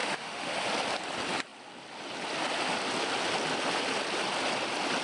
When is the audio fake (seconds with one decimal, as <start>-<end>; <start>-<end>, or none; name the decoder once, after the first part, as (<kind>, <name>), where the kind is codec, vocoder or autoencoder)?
0.0-0.5 (autoencoder, DAC-VAE)